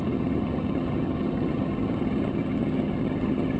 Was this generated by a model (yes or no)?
yes